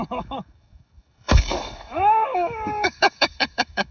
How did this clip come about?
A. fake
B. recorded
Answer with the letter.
A